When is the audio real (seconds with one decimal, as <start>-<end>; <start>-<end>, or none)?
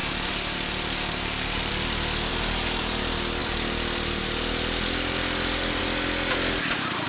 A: 1.7-2.3; 3.0-7.1